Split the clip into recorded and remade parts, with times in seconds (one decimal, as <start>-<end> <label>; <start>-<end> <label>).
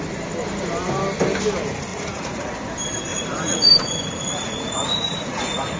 0.0-1.9 recorded; 1.9-2.5 remade; 2.5-3.1 recorded; 3.1-5.8 remade